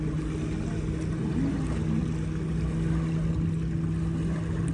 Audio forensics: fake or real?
real